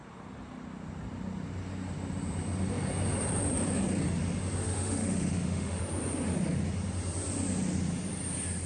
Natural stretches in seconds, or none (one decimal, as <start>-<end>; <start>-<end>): 0.0-4.6; 5.8-8.7